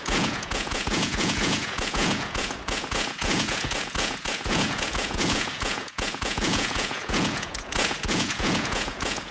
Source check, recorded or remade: remade